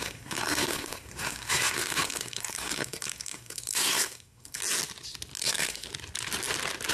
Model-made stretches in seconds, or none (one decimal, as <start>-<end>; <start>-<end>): 0.0-4.6; 5.4-5.9